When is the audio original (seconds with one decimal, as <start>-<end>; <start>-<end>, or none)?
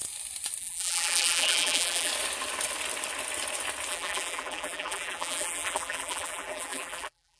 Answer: 0.0-0.6; 2.1-3.9